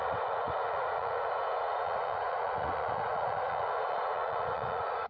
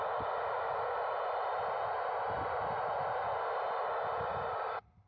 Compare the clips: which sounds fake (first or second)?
first